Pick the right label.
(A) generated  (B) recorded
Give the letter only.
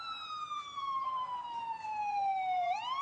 A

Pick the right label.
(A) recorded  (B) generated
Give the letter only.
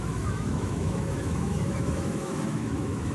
B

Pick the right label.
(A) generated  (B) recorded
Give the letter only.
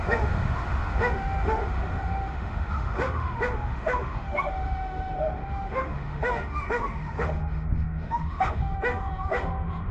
A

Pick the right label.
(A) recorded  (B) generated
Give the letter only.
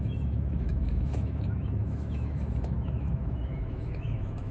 B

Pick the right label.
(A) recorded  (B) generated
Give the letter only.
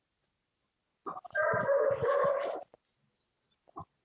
A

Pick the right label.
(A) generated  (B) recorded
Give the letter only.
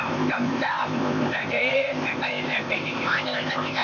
A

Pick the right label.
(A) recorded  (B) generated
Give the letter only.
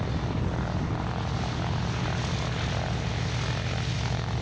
A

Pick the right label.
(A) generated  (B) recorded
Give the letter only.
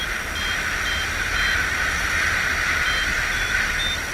B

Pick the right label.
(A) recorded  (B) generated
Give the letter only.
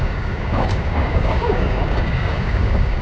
B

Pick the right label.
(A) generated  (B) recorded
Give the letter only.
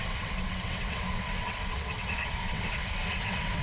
A